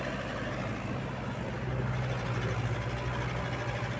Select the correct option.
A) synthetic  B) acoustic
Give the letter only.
B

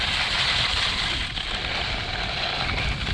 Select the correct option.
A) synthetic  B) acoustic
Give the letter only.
B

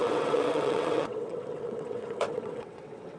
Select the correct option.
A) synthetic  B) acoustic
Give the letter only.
A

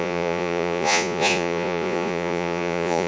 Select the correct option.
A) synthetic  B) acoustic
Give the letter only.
A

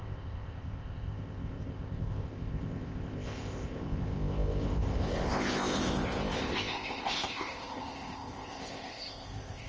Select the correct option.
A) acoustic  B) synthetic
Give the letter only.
B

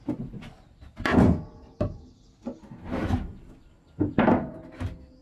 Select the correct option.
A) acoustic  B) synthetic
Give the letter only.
A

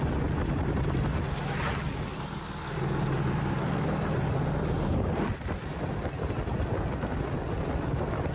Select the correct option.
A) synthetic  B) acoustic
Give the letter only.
B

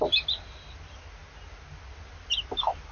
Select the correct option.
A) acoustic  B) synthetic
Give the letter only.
A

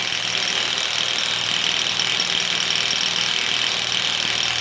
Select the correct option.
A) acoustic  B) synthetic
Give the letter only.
A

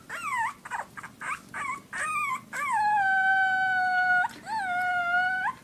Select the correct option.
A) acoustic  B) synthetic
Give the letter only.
A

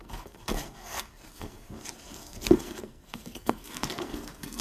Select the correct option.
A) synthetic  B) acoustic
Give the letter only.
A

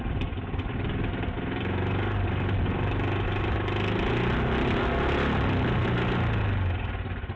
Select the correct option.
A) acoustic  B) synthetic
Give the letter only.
A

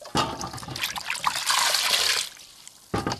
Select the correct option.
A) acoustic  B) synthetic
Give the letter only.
A